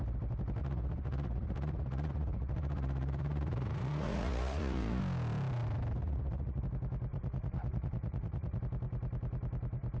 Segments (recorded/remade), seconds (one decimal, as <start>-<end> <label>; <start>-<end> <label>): 0.0-0.6 recorded; 0.6-5.0 remade; 5.0-6.0 recorded; 6.0-6.6 remade; 6.6-7.1 recorded; 7.1-8.6 remade; 8.6-10.0 recorded